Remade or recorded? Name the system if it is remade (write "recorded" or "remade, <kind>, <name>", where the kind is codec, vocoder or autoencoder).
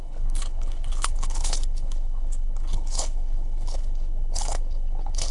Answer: remade, codec, HILCodec